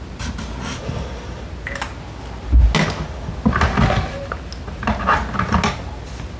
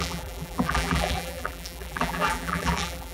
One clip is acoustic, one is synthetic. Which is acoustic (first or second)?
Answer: first